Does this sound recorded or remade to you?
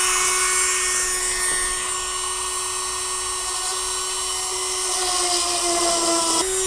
recorded